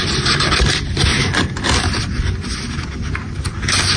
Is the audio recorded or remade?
remade